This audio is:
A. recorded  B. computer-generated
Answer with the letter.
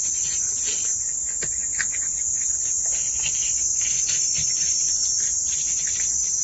A